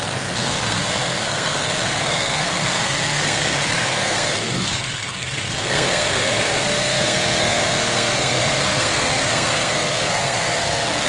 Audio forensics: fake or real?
fake